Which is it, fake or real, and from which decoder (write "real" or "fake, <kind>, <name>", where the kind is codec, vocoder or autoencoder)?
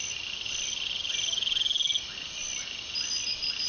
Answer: real